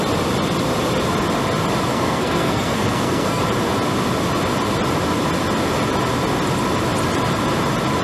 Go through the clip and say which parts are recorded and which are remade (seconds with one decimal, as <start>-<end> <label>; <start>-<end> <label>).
0.0-1.9 recorded; 1.9-3.4 remade; 3.4-8.0 recorded